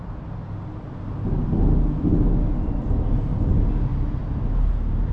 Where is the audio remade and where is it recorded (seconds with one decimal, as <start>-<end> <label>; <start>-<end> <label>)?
0.0-5.1 recorded